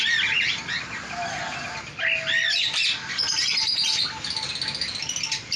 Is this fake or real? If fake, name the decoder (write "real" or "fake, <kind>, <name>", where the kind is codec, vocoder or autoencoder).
fake, vocoder, BigVGAN v2